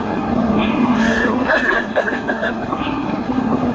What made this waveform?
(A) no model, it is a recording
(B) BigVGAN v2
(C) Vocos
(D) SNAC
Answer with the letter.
D